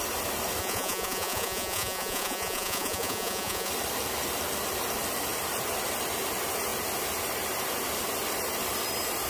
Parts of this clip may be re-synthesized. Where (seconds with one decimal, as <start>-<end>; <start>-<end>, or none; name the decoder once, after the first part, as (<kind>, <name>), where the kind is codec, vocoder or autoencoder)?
0.6-3.7 (vocoder, Vocos)